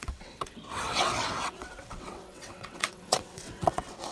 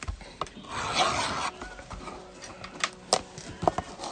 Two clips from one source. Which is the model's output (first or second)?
first